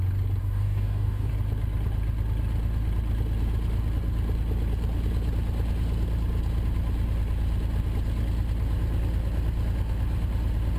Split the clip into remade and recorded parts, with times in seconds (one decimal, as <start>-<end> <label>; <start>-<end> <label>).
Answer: 0.0-0.4 recorded; 0.4-1.3 remade; 1.3-10.8 recorded